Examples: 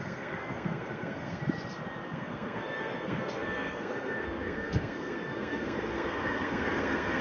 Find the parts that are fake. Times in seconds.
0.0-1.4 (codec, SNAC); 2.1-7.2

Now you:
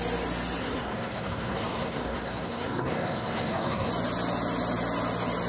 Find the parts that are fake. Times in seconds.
0.6-3.9 (codec, SNAC)

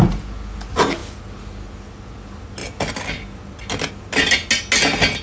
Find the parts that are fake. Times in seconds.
none

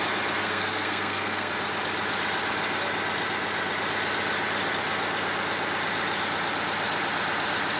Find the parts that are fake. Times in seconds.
0.4-1.5 (codec, SNAC)